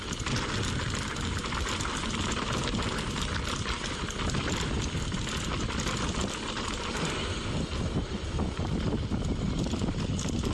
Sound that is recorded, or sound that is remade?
recorded